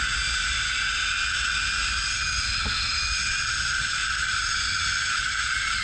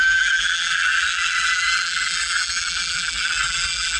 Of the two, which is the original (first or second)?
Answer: first